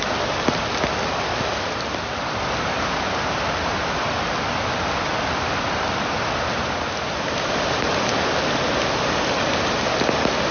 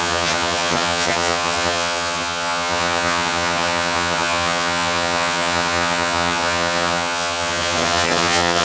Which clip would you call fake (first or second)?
second